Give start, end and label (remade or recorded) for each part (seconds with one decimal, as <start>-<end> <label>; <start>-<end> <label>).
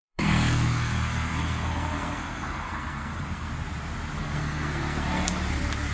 0.0-3.5 remade; 3.5-4.2 recorded; 4.2-5.3 remade; 5.3-5.9 recorded